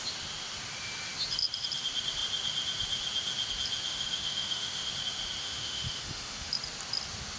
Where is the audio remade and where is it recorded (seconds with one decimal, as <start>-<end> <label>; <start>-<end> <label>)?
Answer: 0.0-3.9 recorded; 3.9-4.9 remade; 4.9-5.4 recorded; 5.4-6.5 remade; 6.5-7.4 recorded